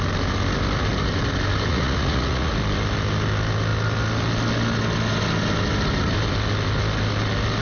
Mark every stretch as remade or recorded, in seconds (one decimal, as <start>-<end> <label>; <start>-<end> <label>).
0.0-1.7 recorded; 1.7-2.5 remade; 2.5-7.6 recorded